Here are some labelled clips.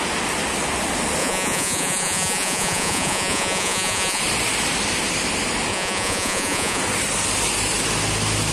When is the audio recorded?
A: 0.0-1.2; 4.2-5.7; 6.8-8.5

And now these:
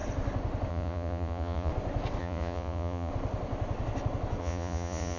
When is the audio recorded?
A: 0.0-0.7; 1.7-2.2; 3.1-4.4